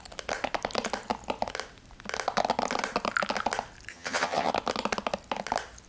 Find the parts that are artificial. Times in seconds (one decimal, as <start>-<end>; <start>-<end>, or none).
3.9-4.5